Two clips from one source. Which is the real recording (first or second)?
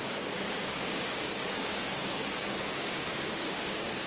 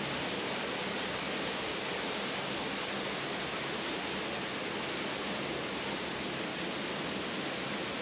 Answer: second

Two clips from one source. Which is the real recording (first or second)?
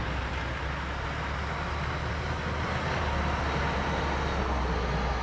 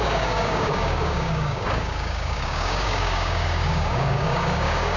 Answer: first